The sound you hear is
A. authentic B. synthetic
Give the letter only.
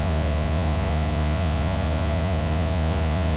B